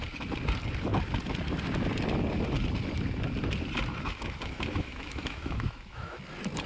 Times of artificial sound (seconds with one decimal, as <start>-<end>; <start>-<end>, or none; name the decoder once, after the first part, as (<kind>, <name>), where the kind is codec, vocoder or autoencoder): 3.9-6.2 (autoencoder, DAC-VAE)